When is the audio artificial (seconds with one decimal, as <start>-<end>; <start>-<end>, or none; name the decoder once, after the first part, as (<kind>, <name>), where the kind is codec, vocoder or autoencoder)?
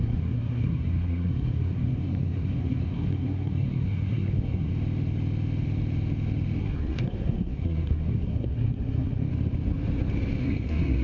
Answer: 0.0-4.7 (codec, SNAC); 6.6-9.3; 10.4-11.0